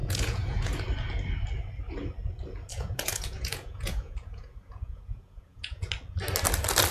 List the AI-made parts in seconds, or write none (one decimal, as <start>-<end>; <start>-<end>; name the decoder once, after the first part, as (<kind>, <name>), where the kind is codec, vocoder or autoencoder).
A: 0.0-0.8 (vocoder, Vocos); 2.7-5.9